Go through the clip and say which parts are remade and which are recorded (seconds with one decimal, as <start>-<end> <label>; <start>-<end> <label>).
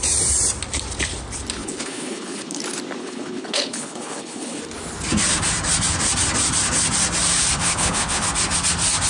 0.0-1.6 recorded; 1.6-2.6 remade; 2.6-3.0 recorded; 3.0-4.6 remade; 4.6-7.6 recorded; 7.6-8.3 remade; 8.3-9.1 recorded